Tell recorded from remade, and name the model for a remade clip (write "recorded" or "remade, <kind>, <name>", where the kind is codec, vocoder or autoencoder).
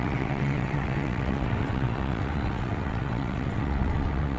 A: remade, vocoder, WaveNeXt